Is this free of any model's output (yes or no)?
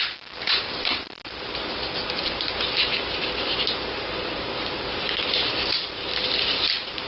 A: no